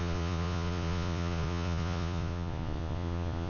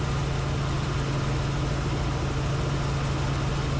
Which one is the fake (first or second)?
first